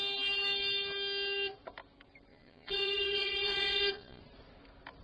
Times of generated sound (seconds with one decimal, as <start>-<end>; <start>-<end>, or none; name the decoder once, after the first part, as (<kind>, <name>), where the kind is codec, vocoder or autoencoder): 2.3-4.2 (vocoder, Vocos)